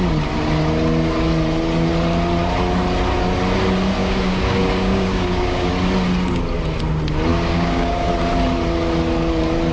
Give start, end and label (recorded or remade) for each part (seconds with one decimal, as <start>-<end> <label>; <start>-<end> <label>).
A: 0.0-4.0 recorded; 4.0-5.7 remade; 5.7-7.3 recorded; 7.3-8.1 remade; 8.1-9.7 recorded